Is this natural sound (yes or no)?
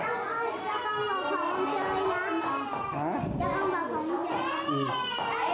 yes